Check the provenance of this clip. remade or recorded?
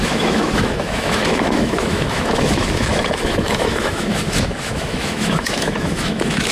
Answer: remade